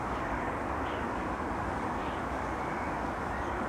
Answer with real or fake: fake